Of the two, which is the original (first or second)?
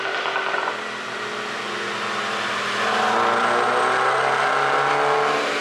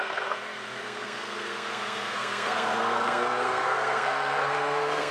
first